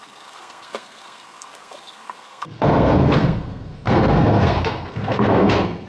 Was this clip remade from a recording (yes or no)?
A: yes